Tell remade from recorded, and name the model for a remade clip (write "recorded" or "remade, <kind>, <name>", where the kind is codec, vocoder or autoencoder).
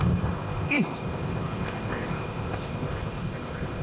remade, codec, ZipCodec